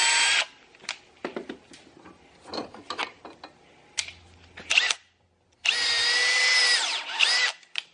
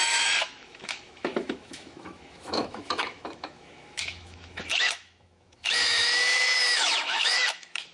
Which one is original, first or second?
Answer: first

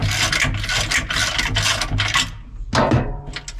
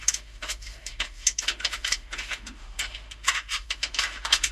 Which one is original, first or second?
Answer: first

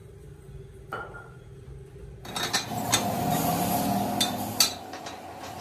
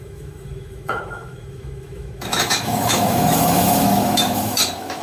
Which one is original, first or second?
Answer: first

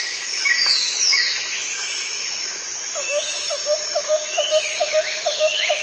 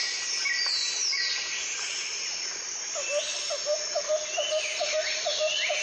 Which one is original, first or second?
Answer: second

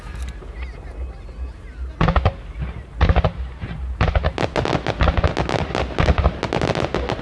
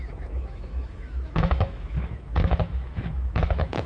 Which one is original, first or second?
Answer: first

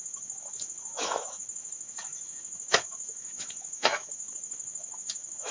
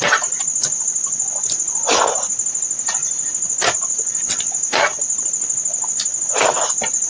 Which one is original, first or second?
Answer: second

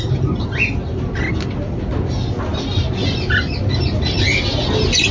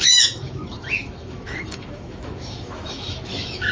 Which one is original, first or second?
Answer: first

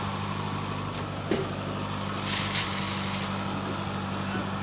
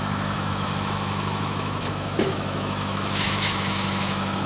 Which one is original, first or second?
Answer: first